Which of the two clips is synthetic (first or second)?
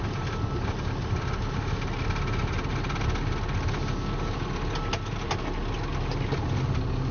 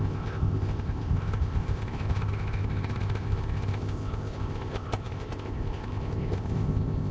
second